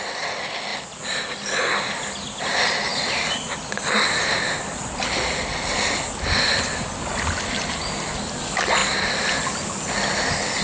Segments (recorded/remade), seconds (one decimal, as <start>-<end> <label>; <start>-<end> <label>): 0.0-10.6 recorded